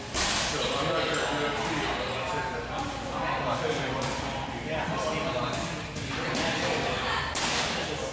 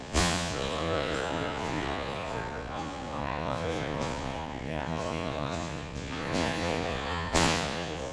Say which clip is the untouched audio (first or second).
first